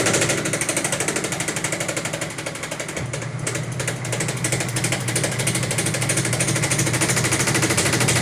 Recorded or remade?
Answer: recorded